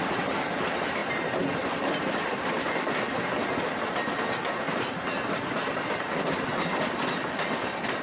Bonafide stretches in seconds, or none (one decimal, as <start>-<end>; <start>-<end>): 0.0-8.0